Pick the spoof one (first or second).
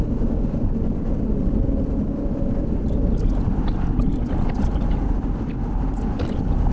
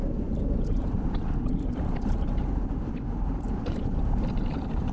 second